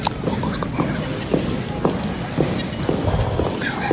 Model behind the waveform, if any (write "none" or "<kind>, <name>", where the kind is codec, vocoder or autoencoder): none